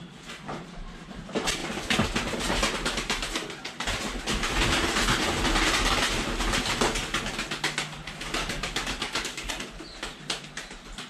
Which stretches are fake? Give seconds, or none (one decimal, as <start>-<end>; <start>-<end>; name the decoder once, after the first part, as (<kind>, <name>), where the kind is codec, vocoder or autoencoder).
8.4-9.5 (codec, DAC)